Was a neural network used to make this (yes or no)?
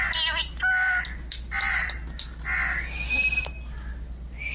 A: no